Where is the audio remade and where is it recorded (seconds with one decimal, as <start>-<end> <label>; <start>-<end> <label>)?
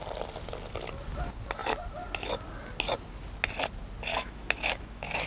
0.0-4.1 recorded; 4.1-5.3 remade